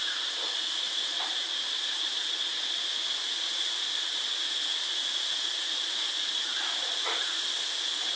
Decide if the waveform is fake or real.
fake